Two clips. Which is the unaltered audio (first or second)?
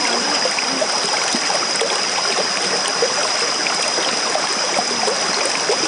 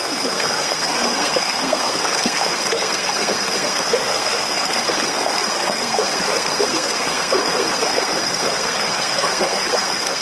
first